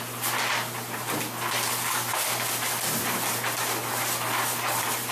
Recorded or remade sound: recorded